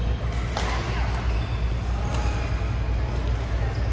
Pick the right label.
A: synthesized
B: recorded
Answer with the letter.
B